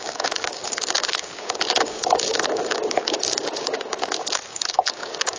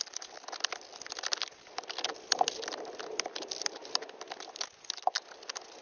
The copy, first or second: first